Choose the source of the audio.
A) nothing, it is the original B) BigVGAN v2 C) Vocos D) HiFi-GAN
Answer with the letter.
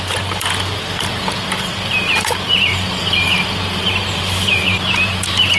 B